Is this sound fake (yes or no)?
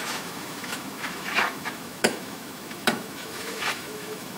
yes